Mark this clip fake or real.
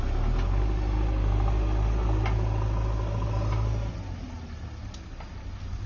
real